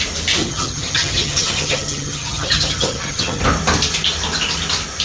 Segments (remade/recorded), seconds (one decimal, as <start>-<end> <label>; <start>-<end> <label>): 0.0-0.4 recorded; 0.4-3.4 remade; 3.4-5.0 recorded